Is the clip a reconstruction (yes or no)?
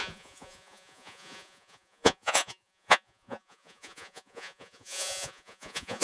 yes